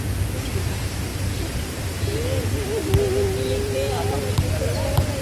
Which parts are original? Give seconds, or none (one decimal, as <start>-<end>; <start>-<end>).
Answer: 0.0-1.1; 4.2-5.2